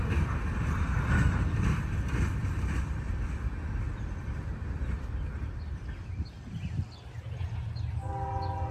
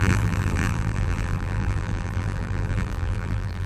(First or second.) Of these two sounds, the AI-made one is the second